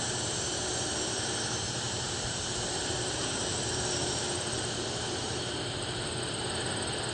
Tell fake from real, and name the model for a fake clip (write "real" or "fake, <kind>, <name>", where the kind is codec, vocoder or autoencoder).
fake, vocoder, BigVGAN v2